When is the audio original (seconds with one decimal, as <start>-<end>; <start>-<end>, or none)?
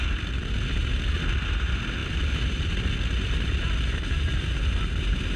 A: 0.0-5.4